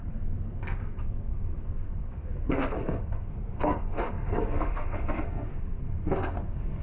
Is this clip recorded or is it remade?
remade